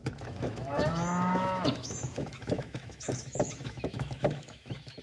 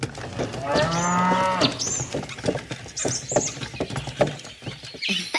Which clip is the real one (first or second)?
second